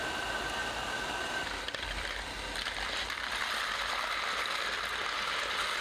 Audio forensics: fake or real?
real